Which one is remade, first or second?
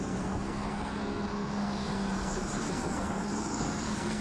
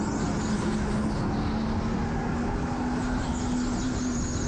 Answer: first